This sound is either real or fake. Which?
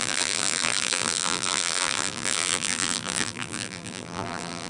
fake